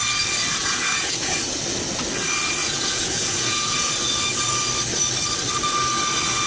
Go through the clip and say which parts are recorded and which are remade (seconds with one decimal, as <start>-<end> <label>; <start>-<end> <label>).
0.0-0.6 recorded; 0.6-1.6 remade; 1.6-2.6 recorded; 2.6-3.9 remade; 3.9-6.5 recorded

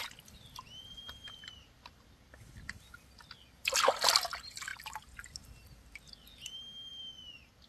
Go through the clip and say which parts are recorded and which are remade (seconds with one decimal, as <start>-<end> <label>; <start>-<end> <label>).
0.0-7.7 recorded

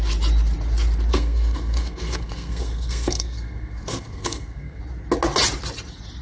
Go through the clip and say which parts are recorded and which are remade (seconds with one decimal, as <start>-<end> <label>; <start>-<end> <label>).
0.0-1.1 recorded; 1.1-4.8 remade; 4.8-6.2 recorded

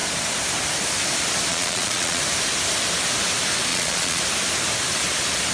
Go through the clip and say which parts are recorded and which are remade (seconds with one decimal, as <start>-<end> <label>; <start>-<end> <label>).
0.0-1.5 recorded; 1.5-2.2 remade; 2.2-3.7 recorded; 3.7-4.2 remade; 4.2-5.5 recorded